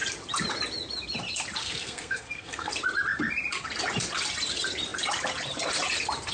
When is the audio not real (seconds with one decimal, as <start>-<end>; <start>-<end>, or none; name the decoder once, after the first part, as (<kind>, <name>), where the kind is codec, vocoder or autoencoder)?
1.6-2.7 (codec, SNAC)